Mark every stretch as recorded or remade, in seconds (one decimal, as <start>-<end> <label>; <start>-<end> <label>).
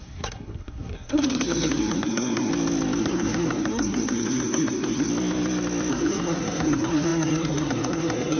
0.0-2.5 remade; 2.5-3.0 recorded; 3.0-5.1 remade; 5.1-5.9 recorded; 5.9-8.4 remade